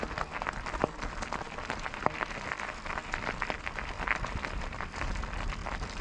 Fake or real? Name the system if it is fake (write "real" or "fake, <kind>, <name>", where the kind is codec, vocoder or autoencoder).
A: real